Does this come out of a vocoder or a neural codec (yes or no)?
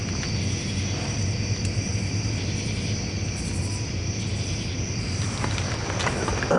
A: no